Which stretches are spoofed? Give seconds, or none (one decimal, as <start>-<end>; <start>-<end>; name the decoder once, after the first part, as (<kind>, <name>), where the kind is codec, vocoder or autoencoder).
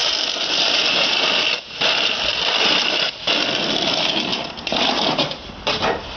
none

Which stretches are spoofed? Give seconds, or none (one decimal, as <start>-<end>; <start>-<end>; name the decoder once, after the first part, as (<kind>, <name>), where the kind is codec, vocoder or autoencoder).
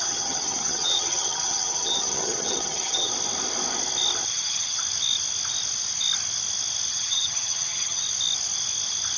0.0-3.1 (vocoder, HiFi-GAN); 4.3-4.8; 6.9-8.0